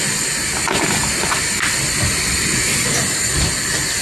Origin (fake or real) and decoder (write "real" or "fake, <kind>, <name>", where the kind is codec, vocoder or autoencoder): real